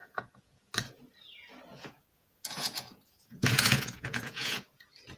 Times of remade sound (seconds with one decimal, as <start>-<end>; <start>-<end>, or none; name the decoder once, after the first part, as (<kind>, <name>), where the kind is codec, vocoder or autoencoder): 0.0-1.0 (vocoder, Vocos); 1.7-4.8